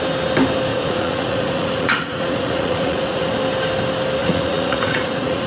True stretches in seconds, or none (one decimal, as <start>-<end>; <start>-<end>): 0.0-0.7; 3.3-4.2